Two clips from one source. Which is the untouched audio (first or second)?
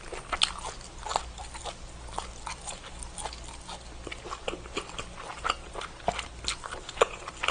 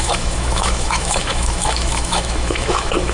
first